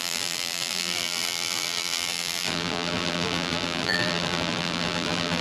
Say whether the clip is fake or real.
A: fake